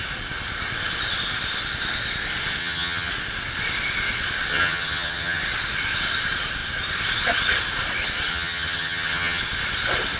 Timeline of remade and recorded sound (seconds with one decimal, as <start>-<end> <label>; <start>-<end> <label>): 0.0-2.6 recorded; 2.6-3.1 remade; 3.1-4.5 recorded; 4.5-5.4 remade; 5.4-8.3 recorded; 8.3-9.4 remade; 9.4-10.2 recorded